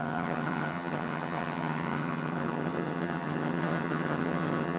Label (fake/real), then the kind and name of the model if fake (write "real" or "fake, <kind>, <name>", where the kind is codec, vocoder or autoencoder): fake, vocoder, HiFi-GAN